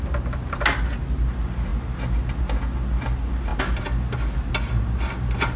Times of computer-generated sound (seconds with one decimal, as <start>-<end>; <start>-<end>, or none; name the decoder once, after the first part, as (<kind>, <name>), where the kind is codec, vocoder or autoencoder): none